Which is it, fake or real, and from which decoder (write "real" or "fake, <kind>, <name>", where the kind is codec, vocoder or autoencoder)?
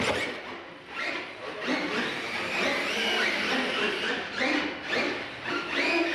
real